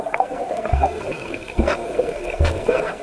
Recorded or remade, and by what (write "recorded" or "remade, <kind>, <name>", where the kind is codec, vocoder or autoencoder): remade, codec, SNAC